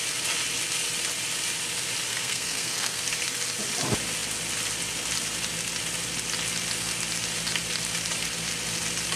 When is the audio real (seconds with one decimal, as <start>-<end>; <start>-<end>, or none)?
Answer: 0.0-2.1; 3.0-9.2